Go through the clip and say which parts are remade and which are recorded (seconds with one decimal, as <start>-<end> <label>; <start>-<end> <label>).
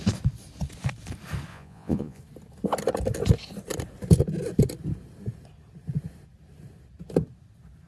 0.0-1.5 recorded; 1.5-2.2 remade; 2.2-7.9 recorded